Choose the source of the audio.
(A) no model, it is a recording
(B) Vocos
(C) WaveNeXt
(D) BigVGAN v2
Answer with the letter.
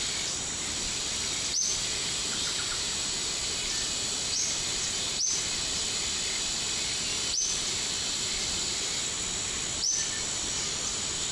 A